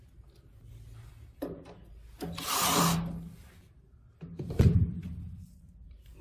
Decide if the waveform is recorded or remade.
recorded